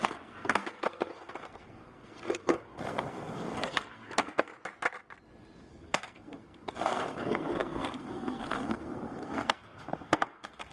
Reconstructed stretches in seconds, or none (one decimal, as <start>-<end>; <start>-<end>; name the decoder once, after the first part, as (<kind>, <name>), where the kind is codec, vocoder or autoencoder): 0.0-4.5 (codec, SNAC); 5.7-10.7